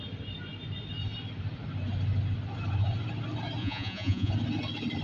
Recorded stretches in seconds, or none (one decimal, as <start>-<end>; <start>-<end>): 0.0-3.6; 4.3-5.0